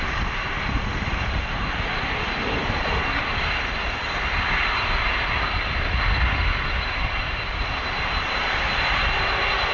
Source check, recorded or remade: remade